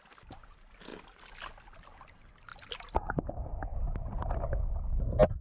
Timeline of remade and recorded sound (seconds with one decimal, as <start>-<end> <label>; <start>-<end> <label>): 0.0-5.4 recorded